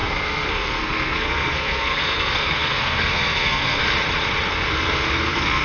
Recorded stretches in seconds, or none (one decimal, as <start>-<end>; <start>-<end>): 3.8-4.5